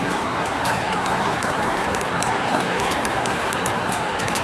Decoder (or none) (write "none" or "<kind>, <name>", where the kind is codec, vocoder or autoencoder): codec, SNAC